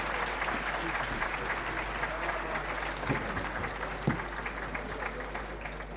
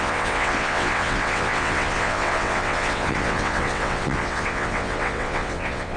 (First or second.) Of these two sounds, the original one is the first